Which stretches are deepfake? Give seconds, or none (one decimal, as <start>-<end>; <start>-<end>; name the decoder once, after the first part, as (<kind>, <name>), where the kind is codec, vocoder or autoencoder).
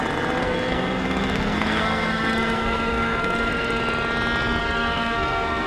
0.4-3.8 (codec, SNAC); 4.6-5.7